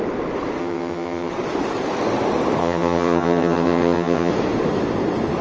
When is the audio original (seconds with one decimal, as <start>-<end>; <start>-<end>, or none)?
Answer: 0.0-0.6; 1.3-2.6; 4.3-5.4